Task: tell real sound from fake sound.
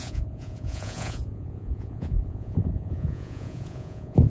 fake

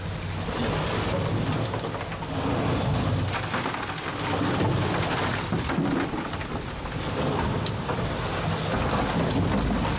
real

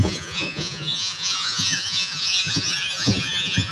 fake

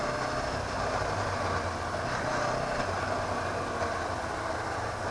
real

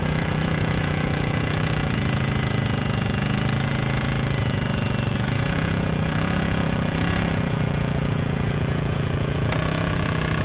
fake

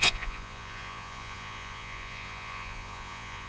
fake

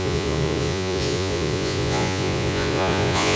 fake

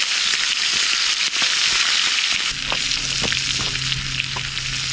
real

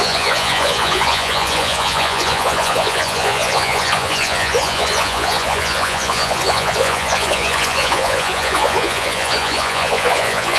fake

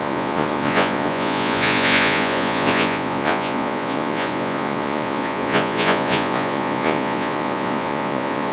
fake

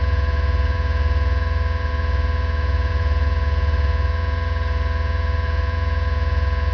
fake